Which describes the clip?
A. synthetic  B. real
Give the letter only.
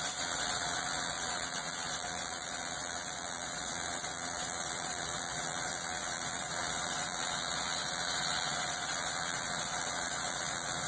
A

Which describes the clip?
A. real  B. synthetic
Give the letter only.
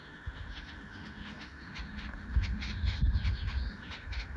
B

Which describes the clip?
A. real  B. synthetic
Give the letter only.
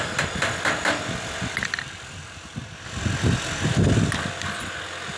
A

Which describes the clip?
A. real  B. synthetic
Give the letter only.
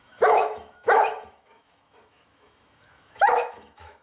B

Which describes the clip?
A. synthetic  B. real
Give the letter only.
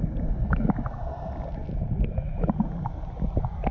B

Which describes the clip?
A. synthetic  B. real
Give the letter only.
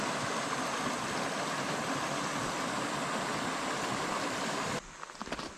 B